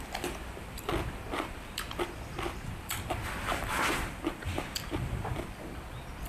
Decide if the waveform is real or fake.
fake